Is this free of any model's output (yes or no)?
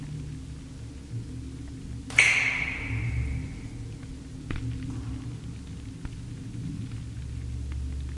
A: yes